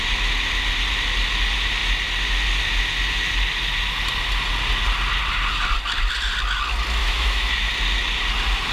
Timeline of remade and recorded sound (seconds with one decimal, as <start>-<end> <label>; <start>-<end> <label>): 0.0-7.0 recorded; 7.0-7.7 remade; 7.7-8.7 recorded